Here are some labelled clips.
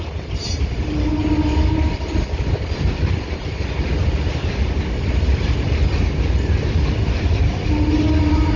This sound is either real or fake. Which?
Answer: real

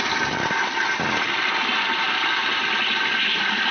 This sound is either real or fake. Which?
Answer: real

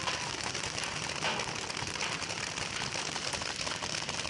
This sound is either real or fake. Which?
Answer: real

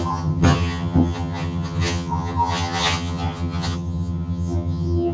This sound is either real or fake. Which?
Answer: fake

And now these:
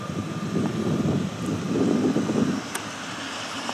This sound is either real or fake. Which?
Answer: real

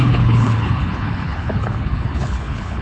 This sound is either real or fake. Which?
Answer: fake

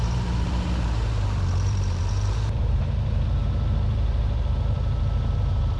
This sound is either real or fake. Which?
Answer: fake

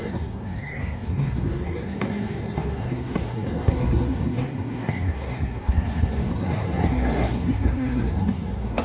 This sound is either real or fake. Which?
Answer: fake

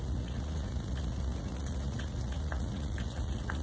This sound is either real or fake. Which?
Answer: fake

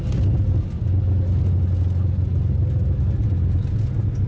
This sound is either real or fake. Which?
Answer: real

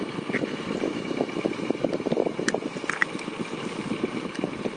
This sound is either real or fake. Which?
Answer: real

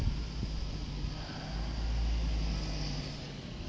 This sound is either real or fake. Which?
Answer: real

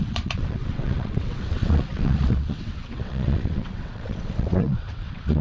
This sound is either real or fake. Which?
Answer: fake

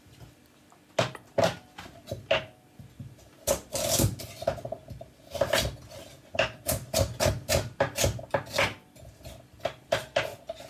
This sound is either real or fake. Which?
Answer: real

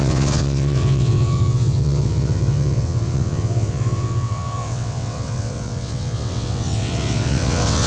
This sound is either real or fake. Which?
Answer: fake